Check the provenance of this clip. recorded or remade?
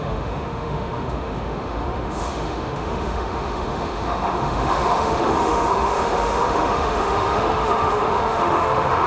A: remade